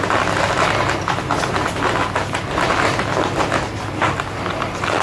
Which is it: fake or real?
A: real